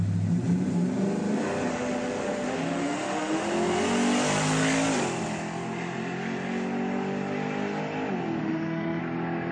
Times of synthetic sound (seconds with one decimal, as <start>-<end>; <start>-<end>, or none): 1.7-3.4; 8.4-9.0